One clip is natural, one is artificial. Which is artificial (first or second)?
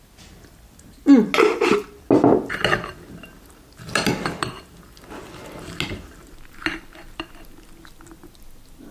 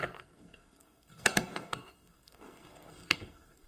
second